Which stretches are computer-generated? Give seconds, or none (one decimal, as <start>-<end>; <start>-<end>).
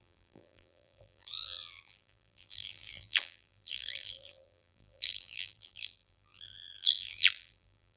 0.0-8.0